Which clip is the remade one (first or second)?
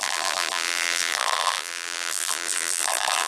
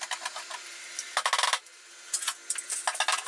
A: first